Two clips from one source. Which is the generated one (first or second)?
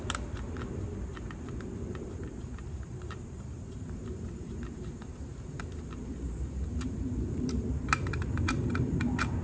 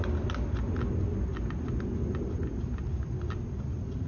first